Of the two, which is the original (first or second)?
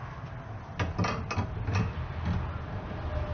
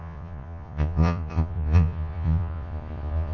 first